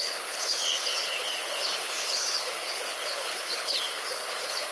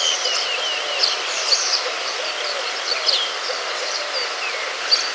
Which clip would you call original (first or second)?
second